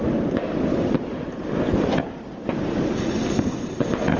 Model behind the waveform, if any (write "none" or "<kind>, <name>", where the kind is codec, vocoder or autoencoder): none